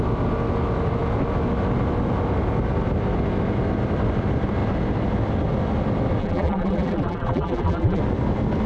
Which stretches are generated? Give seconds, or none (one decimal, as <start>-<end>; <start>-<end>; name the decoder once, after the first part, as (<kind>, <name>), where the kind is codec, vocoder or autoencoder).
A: 6.2-8.0 (vocoder, BigVGAN v2)